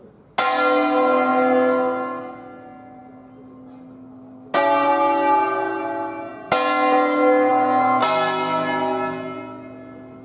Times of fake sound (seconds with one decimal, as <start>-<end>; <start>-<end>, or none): none